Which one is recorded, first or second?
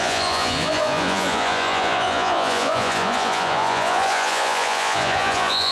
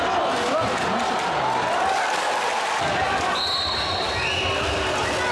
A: second